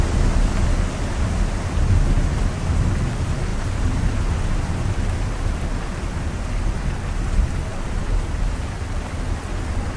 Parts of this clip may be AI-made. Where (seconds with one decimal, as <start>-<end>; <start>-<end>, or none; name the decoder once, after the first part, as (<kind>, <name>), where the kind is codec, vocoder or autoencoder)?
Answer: 3.5-4.9 (vocoder, BigVGAN v2); 7.7-9.0